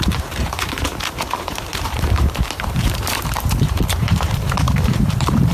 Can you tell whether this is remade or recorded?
remade